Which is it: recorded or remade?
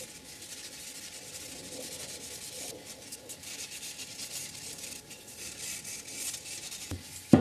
recorded